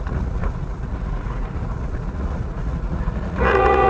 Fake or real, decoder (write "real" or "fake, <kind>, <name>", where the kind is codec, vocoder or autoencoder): fake, vocoder, Vocos